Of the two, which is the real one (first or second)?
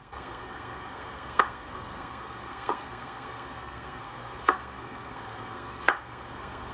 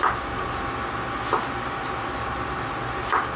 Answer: second